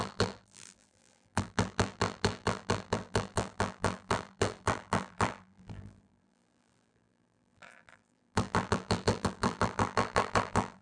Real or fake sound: fake